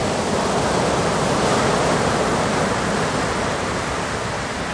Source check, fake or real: real